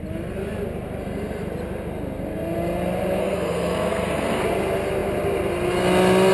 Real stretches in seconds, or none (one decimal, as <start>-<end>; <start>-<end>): 0.0-3.2; 4.4-6.3